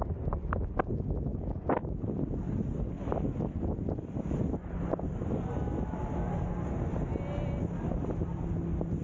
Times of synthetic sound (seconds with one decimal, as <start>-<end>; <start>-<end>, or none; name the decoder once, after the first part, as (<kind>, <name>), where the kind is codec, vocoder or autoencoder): none